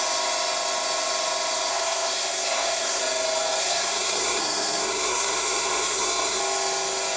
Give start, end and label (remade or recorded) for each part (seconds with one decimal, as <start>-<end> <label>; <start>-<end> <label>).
0.0-1.7 recorded; 1.7-3.0 remade; 3.0-3.6 recorded; 3.6-6.4 remade; 6.4-7.2 recorded

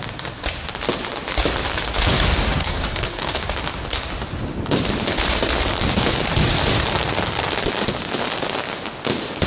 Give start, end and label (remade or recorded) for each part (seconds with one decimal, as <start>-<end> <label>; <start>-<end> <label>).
0.0-2.6 recorded; 2.6-3.4 remade; 3.4-9.5 recorded